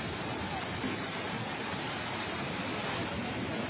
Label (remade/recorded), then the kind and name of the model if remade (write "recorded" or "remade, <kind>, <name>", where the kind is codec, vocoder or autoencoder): remade, vocoder, BigVGAN v2